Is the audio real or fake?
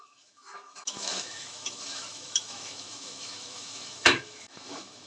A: fake